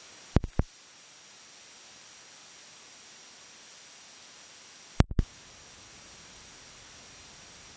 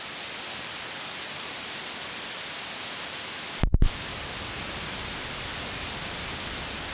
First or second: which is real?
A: first